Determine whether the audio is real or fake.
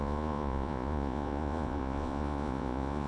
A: fake